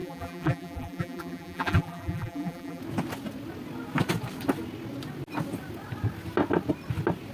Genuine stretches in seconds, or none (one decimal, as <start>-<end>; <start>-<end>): 2.8-7.3